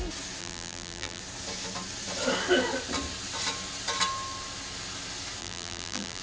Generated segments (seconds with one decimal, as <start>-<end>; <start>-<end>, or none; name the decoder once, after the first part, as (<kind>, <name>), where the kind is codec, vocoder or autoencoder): 0.4-1.2 (vocoder, BigVGAN v2); 5.4-6.2